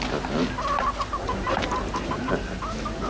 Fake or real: real